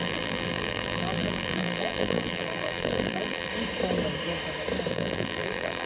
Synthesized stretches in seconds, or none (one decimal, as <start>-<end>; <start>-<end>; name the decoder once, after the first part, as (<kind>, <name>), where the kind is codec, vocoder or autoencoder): 0.0-3.5 (vocoder, BigVGAN v2); 4.9-5.9